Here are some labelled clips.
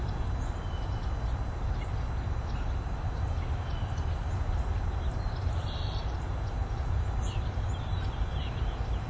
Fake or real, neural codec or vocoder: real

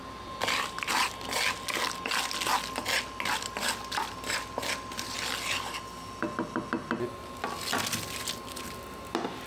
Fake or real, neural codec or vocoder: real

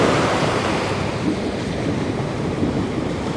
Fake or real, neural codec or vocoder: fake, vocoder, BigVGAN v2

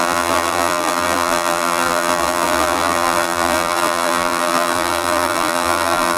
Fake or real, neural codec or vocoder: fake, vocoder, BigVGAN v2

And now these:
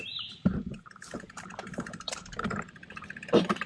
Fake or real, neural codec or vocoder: fake, vocoder, BigVGAN v2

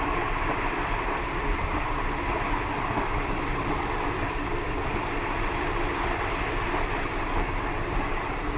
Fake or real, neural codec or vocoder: fake, vocoder, BigVGAN v2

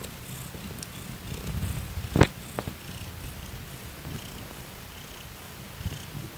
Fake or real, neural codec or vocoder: real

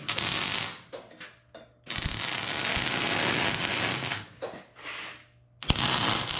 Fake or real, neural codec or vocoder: real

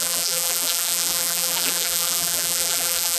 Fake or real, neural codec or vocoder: fake, vocoder, BigVGAN v2